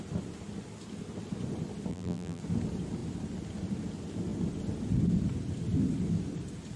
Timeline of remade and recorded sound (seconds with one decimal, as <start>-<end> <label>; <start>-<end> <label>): 0.0-1.9 recorded; 1.9-2.4 remade; 2.4-6.8 recorded